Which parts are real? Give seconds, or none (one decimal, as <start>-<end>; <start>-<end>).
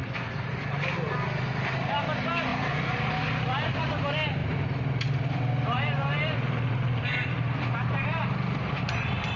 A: 0.0-2.5; 3.0-4.4